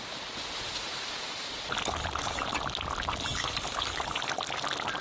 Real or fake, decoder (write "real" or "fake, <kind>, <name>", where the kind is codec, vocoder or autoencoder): real